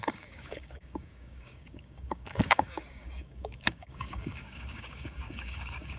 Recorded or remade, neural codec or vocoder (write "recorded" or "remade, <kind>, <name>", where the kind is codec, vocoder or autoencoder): remade, codec, DAC